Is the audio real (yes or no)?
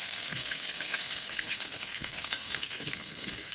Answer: no